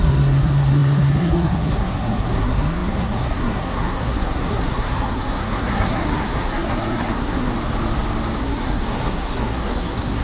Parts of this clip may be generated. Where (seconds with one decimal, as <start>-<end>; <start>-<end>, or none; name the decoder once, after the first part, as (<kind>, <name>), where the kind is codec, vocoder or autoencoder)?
0.0-7.5 (codec, SNAC); 8.4-10.2